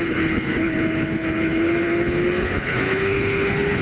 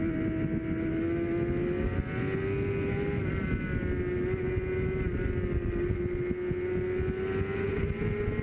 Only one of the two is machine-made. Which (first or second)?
first